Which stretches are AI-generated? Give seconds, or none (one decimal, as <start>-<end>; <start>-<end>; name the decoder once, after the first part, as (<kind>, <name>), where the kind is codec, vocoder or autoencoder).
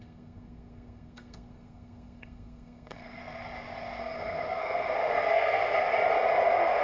0.0-3.2 (codec, SNAC); 4.0-5.6